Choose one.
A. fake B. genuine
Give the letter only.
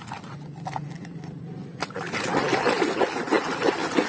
B